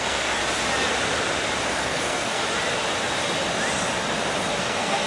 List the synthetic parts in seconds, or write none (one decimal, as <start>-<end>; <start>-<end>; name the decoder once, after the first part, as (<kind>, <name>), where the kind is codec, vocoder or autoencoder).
0.0-0.4 (codec, SNAC); 1.7-2.4; 4.6-5.1